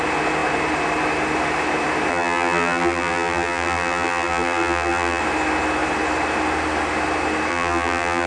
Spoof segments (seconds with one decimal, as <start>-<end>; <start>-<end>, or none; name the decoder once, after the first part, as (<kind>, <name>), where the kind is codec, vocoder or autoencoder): 2.1-5.2 (vocoder, BigVGAN v2); 7.5-8.3